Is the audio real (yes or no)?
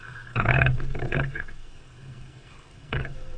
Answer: no